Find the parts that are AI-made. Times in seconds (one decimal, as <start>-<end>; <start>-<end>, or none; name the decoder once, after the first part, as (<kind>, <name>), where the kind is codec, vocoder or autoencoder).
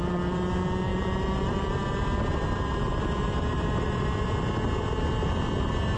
none